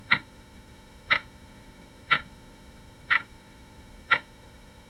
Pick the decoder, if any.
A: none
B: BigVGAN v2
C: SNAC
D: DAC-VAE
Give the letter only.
D